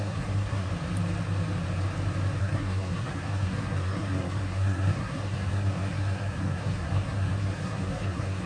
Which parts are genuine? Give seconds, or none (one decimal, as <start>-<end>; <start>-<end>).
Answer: 0.7-2.4